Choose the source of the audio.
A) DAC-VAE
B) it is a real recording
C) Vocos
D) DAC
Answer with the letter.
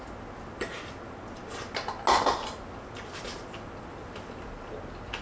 B